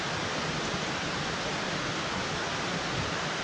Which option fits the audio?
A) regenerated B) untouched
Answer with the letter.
B